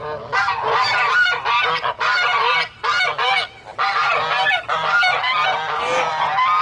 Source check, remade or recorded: recorded